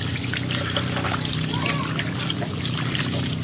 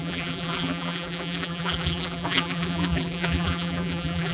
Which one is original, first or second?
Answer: first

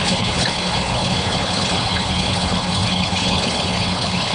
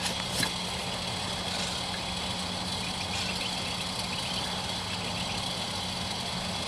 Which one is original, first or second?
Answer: second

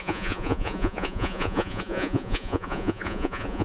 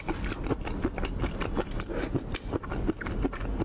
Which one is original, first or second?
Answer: second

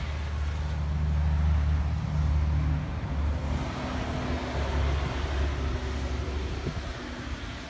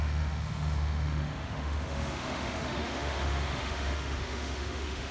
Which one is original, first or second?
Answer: first